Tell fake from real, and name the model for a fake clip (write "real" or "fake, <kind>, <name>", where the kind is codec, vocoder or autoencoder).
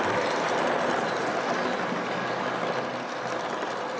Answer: real